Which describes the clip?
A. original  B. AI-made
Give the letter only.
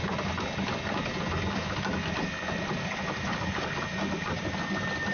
A